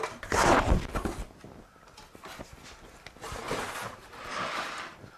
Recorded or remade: recorded